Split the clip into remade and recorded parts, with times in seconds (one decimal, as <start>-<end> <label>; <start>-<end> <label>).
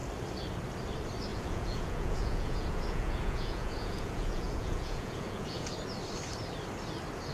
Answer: 0.0-1.3 recorded; 1.3-5.7 remade; 5.7-7.3 recorded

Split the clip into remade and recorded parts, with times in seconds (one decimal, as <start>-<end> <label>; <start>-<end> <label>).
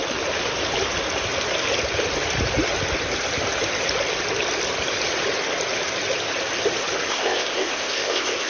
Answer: 0.0-7.1 recorded; 7.1-8.5 remade